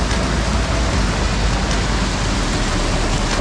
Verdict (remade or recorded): recorded